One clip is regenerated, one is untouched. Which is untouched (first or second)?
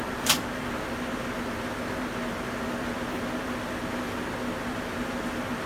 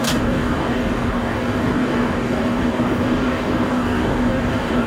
first